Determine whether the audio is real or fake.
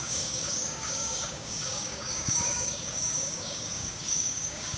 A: fake